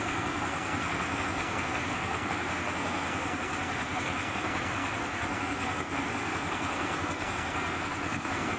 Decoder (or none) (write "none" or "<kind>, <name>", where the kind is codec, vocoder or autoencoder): codec, SNAC